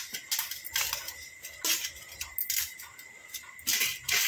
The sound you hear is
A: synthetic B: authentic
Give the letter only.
B